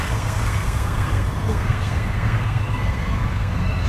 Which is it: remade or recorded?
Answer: remade